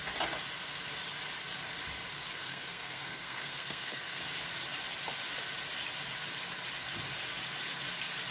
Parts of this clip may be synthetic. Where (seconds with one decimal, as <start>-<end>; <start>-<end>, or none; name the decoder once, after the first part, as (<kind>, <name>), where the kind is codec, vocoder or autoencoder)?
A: 2.1-4.2 (codec, SNAC)